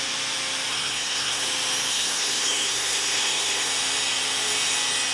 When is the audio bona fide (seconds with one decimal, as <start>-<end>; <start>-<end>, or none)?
0.0-0.7; 1.4-1.9; 3.7-5.1

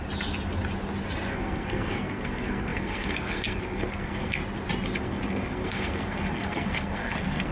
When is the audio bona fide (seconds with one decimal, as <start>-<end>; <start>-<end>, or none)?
0.0-1.3; 4.4-5.0

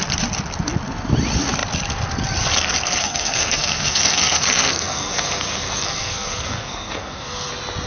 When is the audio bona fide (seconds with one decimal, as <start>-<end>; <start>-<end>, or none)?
0.0-3.0; 7.5-7.9

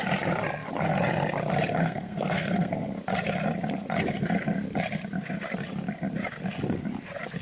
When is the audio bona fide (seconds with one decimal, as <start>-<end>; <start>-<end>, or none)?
0.0-1.8; 2.7-7.4

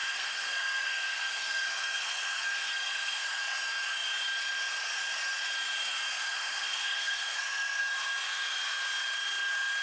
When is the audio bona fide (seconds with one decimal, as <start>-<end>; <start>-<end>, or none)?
3.4-6.3; 7.8-9.8

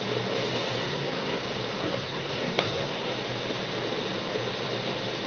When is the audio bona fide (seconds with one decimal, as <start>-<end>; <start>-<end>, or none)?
0.0-0.8; 1.4-1.8; 3.1-5.3